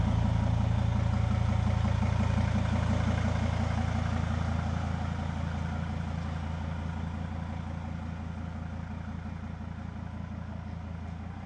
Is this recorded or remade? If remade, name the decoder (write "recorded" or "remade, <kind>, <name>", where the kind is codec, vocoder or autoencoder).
recorded